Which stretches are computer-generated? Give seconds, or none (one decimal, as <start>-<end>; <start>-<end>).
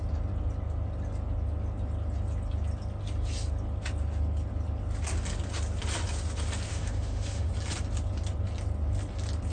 6.7-7.5